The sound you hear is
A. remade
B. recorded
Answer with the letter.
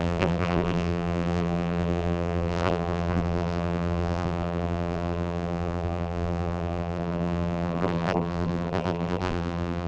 A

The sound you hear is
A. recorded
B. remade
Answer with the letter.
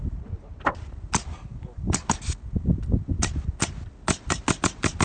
A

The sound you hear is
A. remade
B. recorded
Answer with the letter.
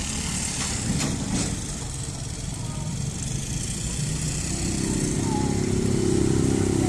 B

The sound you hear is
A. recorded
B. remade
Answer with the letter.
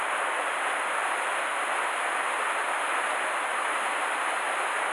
A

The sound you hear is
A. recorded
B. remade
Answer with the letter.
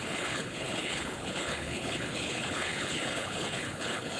B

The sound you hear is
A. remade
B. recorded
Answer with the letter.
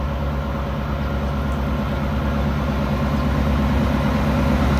B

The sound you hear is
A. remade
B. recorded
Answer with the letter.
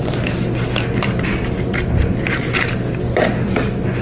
B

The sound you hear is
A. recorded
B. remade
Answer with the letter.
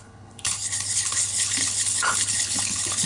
B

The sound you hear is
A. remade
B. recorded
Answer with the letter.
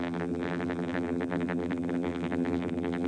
A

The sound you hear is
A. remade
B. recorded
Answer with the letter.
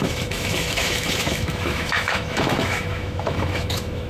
A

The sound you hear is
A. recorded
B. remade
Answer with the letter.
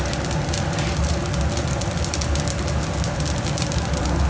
A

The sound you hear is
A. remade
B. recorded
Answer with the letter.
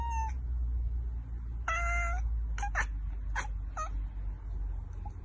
B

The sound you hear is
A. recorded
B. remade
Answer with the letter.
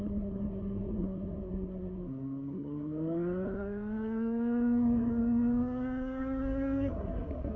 B